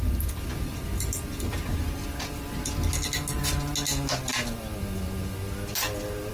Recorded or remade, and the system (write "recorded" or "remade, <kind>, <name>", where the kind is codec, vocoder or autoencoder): recorded